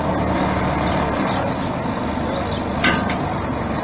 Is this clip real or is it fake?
real